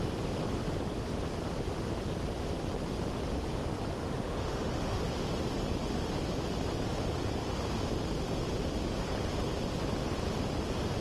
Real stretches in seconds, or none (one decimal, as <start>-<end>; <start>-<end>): 0.0-4.0; 5.0-11.0